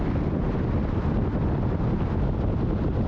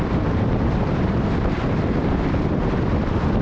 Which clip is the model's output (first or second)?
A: second